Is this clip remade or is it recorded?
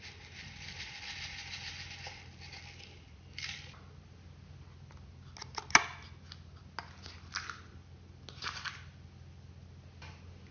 recorded